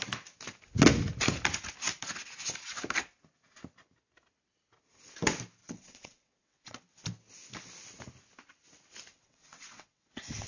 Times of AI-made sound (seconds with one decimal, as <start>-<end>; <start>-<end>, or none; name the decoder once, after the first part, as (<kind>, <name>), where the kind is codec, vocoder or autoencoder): 5.6-6.8 (vocoder, WaveNeXt); 9.1-10.5